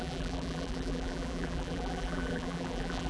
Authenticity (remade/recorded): remade